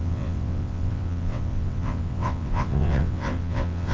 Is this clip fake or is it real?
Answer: fake